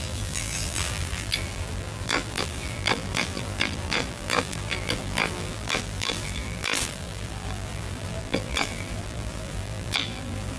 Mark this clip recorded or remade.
remade